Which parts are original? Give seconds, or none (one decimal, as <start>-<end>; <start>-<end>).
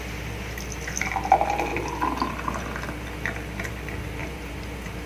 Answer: 0.0-4.2